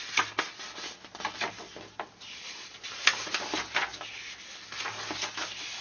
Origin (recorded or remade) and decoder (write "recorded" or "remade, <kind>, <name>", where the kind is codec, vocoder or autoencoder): recorded